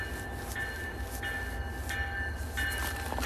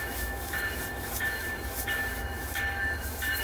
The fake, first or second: second